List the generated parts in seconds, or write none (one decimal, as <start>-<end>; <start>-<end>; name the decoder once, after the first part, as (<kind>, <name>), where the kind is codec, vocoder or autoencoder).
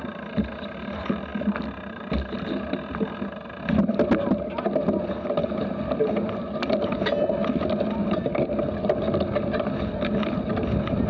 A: none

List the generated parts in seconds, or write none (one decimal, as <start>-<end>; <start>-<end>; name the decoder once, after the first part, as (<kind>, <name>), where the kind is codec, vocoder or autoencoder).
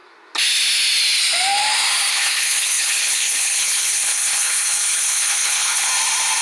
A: 2.1-5.9 (codec, HILCodec)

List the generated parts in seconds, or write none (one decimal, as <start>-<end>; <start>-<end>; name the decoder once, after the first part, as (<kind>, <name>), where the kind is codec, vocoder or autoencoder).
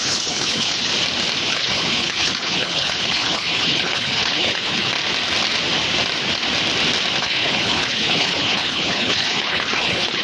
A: 0.0-0.9 (codec, HILCodec); 1.5-4.9; 7.2-10.2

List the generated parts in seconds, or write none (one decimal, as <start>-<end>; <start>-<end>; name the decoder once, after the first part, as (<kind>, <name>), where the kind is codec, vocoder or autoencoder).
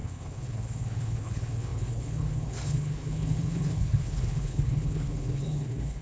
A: 0.0-6.0 (codec, HILCodec)